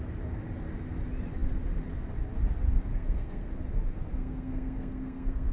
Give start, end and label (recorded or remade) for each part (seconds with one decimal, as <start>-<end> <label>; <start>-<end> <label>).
0.0-2.9 recorded; 2.9-3.5 remade; 3.5-4.1 recorded; 4.1-5.5 remade